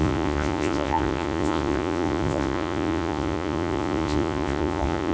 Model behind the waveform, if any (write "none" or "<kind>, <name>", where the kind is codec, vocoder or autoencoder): vocoder, Vocos